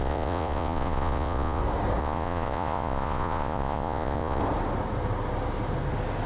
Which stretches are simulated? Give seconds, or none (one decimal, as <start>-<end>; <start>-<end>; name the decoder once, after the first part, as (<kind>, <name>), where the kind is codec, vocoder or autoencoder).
0.0-1.6 (vocoder, Vocos); 2.0-4.4